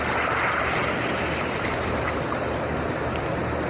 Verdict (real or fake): real